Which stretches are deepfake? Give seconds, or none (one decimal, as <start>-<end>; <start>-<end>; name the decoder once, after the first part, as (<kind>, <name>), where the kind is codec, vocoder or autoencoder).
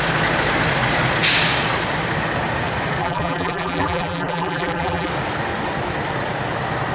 3.0-5.1 (vocoder, BigVGAN v2)